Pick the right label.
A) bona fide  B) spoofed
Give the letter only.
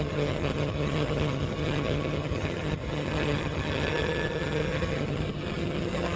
B